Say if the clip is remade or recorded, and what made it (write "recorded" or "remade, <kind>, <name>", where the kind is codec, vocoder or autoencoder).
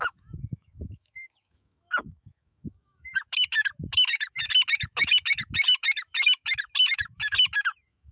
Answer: remade, autoencoder, DAC-VAE